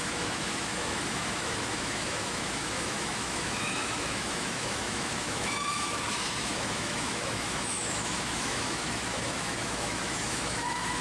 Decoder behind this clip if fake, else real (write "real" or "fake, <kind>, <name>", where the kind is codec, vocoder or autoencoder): fake, autoencoder, DAC-VAE